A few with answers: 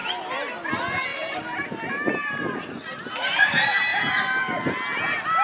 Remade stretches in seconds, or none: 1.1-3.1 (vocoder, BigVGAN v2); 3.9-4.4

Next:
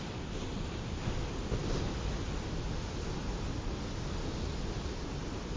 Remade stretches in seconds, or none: none

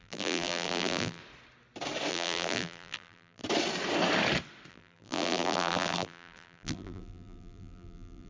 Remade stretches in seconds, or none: 0.0-1.2 (vocoder, BigVGAN v2); 2.1-3.4; 4.7-8.3

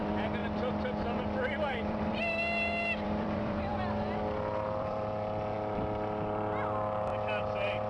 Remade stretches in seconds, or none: 0.0-0.4 (vocoder, BigVGAN v2); 1.7-3.7; 4.8-7.1

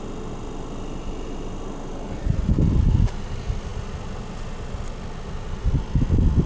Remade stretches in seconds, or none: none

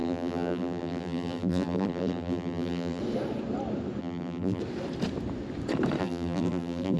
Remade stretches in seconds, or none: 0.0-3.0 (vocoder, BigVGAN v2); 4.0-4.6; 6.0-7.0